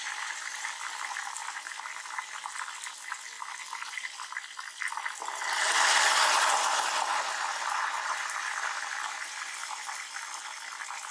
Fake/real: real